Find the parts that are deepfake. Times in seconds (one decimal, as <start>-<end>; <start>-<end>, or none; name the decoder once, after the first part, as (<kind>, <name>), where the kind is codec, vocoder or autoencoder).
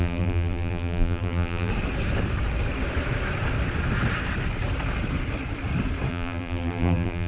0.0-1.7 (vocoder, BigVGAN v2); 6.1-7.3